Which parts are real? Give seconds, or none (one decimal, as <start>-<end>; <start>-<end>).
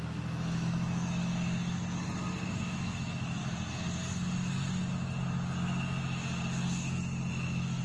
1.3-2.6; 3.4-7.3